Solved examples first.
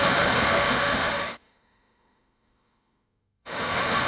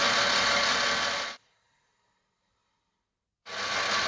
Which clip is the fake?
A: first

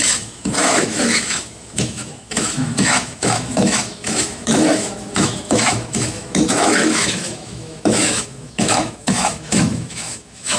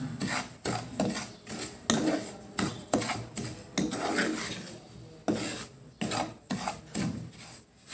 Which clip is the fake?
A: first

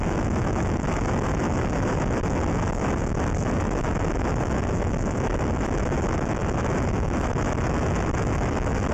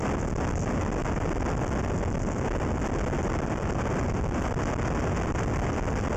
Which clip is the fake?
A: first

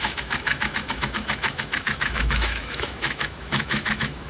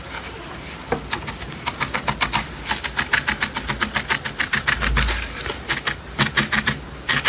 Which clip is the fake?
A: first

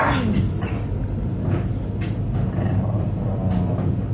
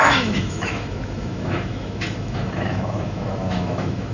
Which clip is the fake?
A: second